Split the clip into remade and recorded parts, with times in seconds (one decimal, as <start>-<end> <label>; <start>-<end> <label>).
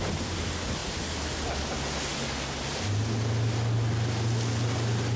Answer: 0.0-5.2 recorded